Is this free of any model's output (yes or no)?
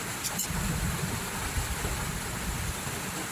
yes